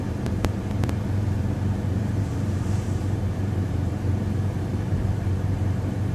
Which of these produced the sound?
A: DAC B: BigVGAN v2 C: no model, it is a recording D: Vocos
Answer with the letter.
B